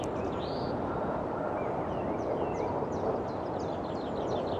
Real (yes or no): yes